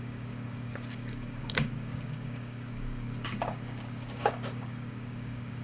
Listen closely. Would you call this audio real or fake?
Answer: fake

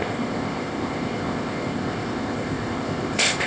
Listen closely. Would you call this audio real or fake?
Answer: fake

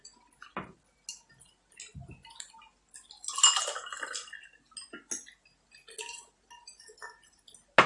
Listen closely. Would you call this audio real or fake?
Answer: real